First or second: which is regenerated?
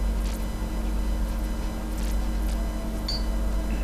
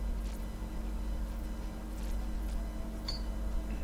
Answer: second